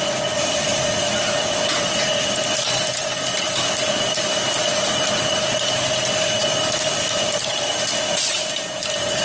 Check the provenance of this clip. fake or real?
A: real